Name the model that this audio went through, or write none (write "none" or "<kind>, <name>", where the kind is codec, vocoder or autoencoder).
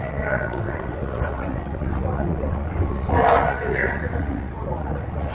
vocoder, WaveNeXt